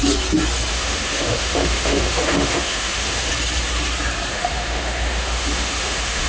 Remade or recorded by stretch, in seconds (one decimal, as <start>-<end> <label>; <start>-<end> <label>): 0.0-0.7 recorded; 0.7-3.3 remade; 3.3-4.3 recorded; 4.3-6.3 remade